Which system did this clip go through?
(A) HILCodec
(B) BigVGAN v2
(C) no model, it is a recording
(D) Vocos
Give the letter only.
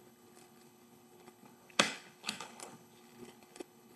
A